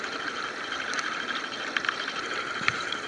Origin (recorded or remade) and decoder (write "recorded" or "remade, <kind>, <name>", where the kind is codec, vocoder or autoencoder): recorded